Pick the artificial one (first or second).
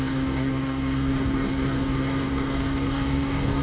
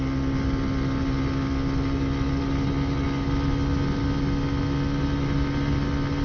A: first